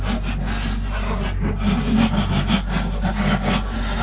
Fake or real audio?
real